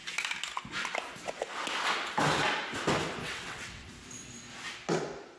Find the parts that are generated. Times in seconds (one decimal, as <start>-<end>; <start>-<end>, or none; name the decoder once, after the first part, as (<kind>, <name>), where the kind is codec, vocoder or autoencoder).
3.2-3.9 (vocoder, WaveNeXt)